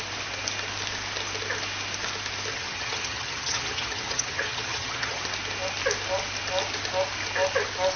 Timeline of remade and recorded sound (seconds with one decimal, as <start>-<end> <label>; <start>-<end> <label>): 0.0-2.5 recorded; 2.5-5.2 remade; 5.2-8.0 recorded